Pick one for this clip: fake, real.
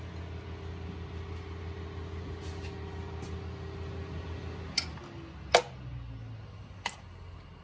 real